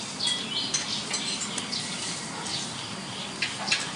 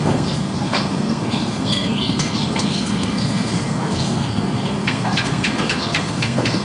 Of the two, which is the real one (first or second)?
first